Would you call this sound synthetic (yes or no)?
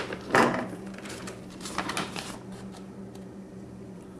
yes